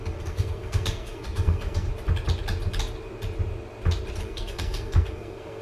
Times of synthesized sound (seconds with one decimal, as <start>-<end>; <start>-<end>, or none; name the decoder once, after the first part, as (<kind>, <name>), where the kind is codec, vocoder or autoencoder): 0.0-1.9 (codec, SNAC); 4.2-5.6